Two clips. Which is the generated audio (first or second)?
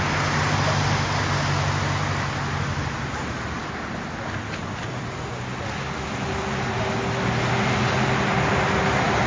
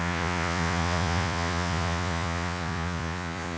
second